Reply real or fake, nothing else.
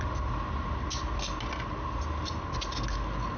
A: real